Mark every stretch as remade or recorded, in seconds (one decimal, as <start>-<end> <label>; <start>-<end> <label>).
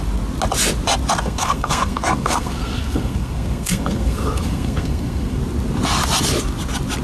0.0-1.2 recorded; 1.2-5.4 remade; 5.4-7.0 recorded